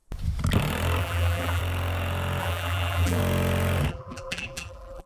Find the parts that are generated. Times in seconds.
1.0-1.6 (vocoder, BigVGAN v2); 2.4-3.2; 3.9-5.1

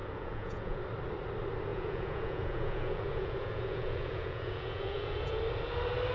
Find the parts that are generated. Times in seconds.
0.0-0.8 (vocoder, Vocos); 1.7-5.4

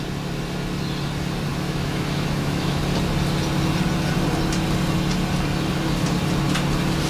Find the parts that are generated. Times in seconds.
1.5-2.8 (autoencoder, DAC-VAE)

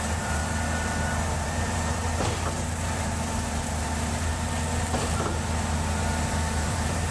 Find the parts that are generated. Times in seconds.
0.0-0.4 (vocoder, BigVGAN v2); 1.3-4.3; 6.2-7.1

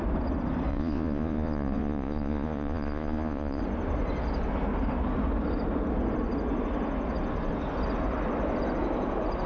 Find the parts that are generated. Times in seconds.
0.7-3.6 (vocoder, Vocos)

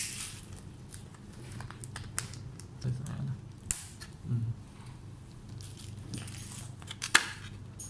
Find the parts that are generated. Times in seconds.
none